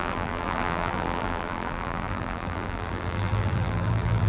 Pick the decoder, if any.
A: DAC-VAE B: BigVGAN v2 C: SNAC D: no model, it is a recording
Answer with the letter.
B